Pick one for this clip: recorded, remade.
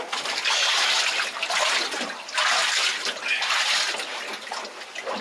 recorded